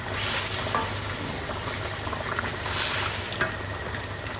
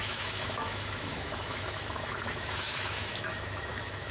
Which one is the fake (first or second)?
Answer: second